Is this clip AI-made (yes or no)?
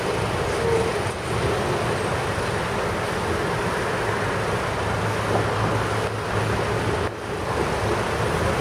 no